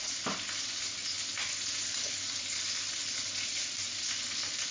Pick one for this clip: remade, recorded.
recorded